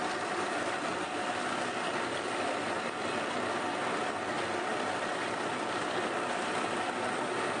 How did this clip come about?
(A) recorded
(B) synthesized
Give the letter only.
A